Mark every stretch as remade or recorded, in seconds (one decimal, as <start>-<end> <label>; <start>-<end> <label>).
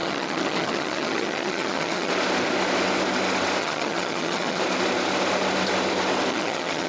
0.0-2.1 remade; 2.1-3.6 recorded; 3.6-4.6 remade; 4.6-6.3 recorded; 6.3-6.9 remade